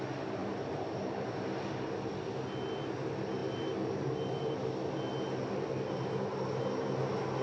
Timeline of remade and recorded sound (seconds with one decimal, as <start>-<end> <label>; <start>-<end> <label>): 0.0-0.4 recorded; 0.4-1.4 remade; 1.4-7.4 recorded